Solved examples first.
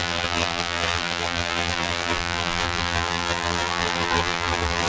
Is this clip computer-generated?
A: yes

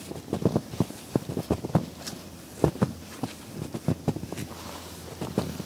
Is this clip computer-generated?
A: no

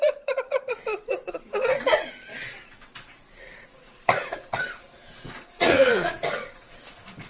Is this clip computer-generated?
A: yes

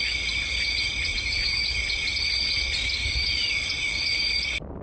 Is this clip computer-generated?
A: no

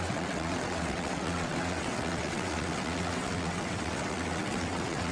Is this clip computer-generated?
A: yes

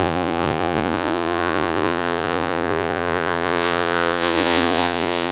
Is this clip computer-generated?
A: yes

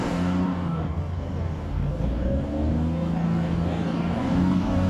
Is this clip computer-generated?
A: yes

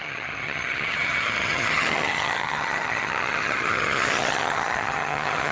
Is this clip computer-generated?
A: yes